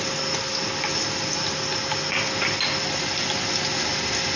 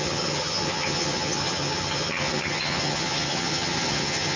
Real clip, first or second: first